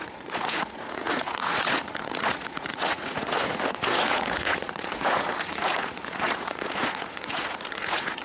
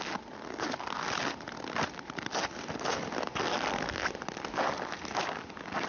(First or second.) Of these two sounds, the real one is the second